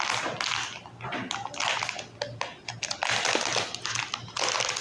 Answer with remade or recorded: recorded